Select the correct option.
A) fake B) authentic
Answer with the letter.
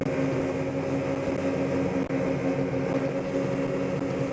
B